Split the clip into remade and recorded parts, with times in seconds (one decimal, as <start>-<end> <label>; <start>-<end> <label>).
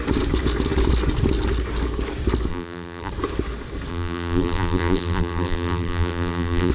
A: 0.0-2.5 recorded; 2.5-3.1 remade; 3.1-3.9 recorded; 3.9-6.7 remade